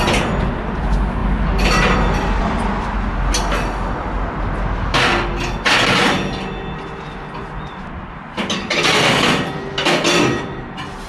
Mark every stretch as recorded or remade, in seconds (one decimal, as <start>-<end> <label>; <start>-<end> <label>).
0.0-11.1 recorded